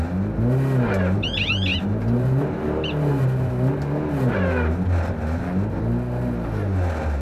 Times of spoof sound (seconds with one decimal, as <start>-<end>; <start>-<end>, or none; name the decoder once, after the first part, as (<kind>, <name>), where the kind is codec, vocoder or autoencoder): 1.7-3.1 (vocoder, BigVGAN v2)